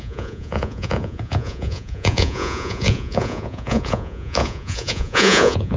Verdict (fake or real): fake